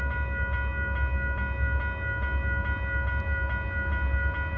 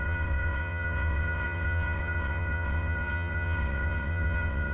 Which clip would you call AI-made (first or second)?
second